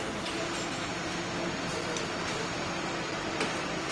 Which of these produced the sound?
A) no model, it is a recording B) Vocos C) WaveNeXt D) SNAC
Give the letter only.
A